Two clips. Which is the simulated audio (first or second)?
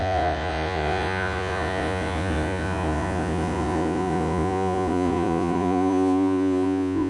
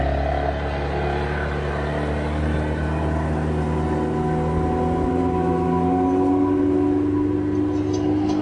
first